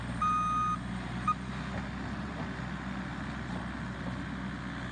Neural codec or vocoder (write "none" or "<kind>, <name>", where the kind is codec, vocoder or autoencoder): none